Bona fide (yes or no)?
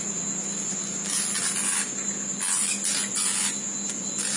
yes